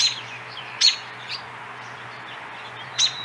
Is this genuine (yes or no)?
no